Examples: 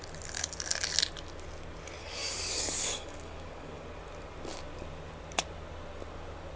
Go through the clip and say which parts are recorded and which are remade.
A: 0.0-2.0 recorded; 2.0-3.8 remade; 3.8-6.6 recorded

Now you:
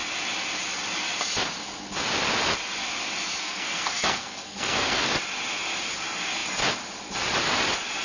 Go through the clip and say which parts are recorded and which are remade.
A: 0.0-3.4 recorded; 3.4-5.1 remade; 5.1-8.0 recorded

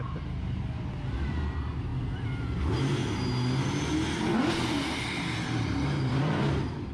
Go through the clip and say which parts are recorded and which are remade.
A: 0.0-4.3 recorded; 4.3-6.9 remade

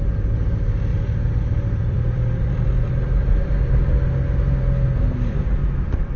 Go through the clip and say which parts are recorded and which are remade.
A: 0.0-0.9 recorded; 0.9-4.6 remade; 4.6-6.2 recorded

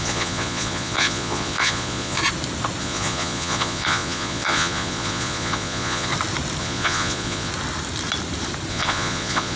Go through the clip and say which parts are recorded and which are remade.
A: 0.0-2.2 remade; 2.2-2.8 recorded; 2.8-6.1 remade; 6.1-6.6 recorded; 6.6-7.5 remade; 7.5-8.7 recorded; 8.7-9.6 remade

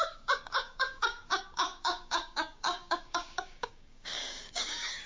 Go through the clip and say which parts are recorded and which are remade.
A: 0.0-5.1 remade

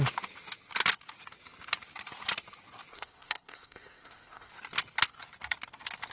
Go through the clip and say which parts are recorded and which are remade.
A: 0.0-2.9 recorded; 2.9-4.5 remade; 4.5-6.1 recorded

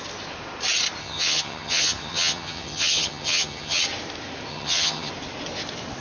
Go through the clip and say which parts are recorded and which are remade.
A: 0.0-1.0 recorded; 1.0-3.8 remade; 3.8-4.5 recorded; 4.5-5.1 remade; 5.1-6.0 recorded